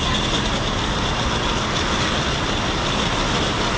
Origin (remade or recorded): recorded